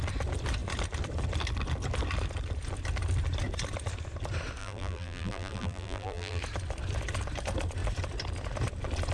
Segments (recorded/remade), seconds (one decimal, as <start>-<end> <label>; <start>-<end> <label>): 0.0-4.6 recorded; 4.6-6.4 remade; 6.4-9.1 recorded